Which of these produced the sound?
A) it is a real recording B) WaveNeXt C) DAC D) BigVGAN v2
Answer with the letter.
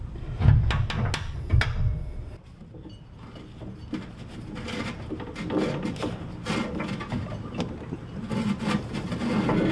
A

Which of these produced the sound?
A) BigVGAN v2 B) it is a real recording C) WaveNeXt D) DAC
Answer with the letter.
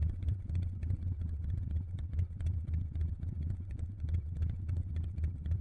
C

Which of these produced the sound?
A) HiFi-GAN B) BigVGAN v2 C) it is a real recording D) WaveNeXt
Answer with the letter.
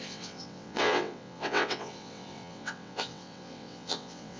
D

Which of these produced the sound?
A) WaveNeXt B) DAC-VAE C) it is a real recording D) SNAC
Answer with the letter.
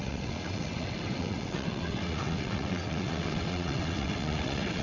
A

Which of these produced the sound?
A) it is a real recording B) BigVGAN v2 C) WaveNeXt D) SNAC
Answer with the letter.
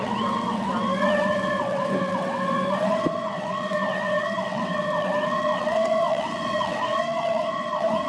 C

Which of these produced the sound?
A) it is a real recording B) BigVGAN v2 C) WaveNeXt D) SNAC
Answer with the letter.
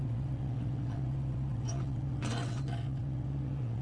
C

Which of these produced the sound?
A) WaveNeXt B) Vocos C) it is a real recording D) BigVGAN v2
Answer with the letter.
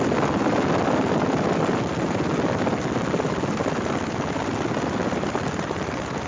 C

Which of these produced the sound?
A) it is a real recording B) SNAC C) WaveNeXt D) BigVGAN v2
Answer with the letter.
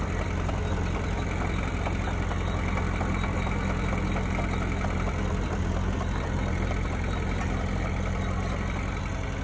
A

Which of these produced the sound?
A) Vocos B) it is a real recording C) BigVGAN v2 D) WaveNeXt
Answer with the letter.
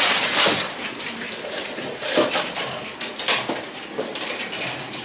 B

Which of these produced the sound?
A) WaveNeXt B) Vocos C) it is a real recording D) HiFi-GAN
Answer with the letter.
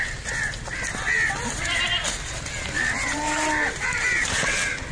C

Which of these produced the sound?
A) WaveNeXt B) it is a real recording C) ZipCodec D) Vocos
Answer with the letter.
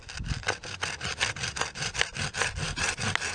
B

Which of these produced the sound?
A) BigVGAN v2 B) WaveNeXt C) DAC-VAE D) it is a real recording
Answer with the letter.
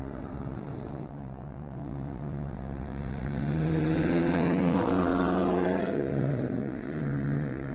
B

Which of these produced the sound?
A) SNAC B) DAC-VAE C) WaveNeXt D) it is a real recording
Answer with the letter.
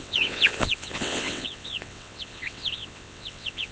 C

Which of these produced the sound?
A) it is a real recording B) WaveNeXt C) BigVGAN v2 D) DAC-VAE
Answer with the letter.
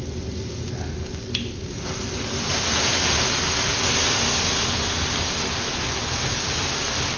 A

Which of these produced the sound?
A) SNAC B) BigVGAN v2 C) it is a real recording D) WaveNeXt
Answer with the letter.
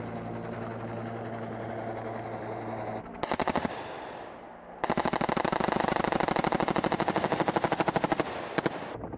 C